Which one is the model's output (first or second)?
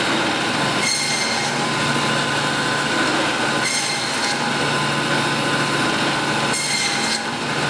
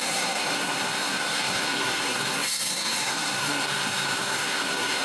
second